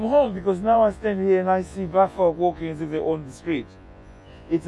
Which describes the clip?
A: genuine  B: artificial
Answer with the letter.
B